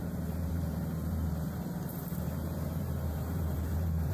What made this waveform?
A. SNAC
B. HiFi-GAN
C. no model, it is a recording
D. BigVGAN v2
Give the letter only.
D